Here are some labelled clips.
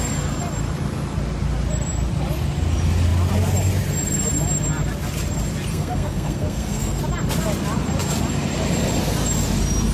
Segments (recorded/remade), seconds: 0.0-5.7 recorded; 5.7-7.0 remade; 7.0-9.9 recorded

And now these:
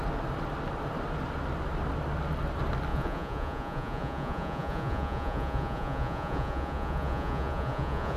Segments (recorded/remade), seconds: 0.0-2.9 recorded; 2.9-8.2 remade

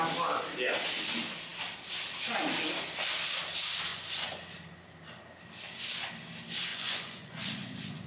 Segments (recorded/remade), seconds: 0.0-3.9 recorded; 3.9-4.4 remade; 4.4-6.7 recorded; 6.7-8.1 remade

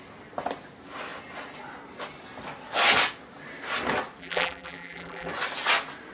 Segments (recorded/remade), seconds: 0.0-4.2 recorded; 4.2-5.3 remade; 5.3-6.1 recorded

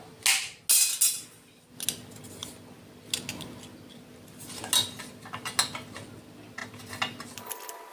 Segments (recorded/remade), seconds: 0.0-7.9 recorded

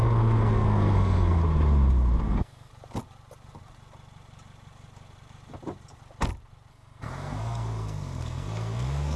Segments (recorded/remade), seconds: 0.0-1.4 remade; 1.4-2.2 recorded; 2.2-2.7 remade; 2.7-6.7 recorded; 6.7-9.2 remade

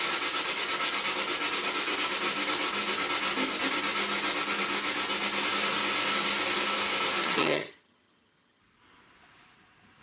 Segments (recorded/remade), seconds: 0.0-7.2 recorded; 7.2-8.6 remade; 8.6-10.0 recorded